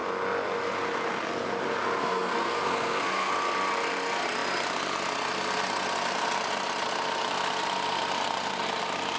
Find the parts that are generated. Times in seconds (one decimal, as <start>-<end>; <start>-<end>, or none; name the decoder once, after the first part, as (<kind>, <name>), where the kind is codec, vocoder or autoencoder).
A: 2.0-3.3 (codec, SNAC)